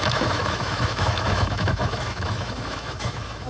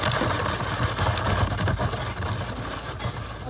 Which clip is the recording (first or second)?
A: second